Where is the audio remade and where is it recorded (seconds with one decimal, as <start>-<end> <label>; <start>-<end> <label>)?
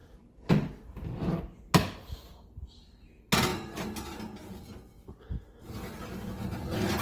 0.0-7.0 recorded